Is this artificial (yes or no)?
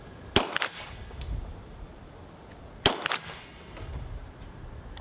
no